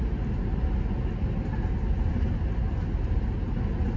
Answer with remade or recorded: recorded